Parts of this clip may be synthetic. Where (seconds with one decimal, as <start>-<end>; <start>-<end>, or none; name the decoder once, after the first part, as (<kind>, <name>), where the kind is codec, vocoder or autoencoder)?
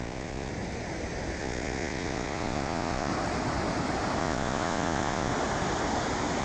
0.0-0.5 (vocoder, Vocos); 1.4-3.1; 4.2-5.3